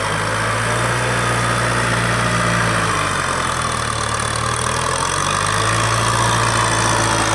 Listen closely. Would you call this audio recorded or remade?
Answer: recorded